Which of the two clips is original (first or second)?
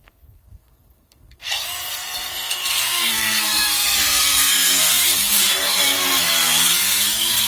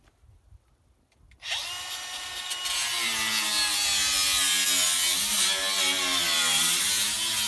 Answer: second